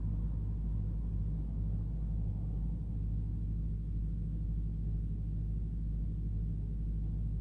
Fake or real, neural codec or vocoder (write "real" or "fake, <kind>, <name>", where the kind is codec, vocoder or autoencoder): real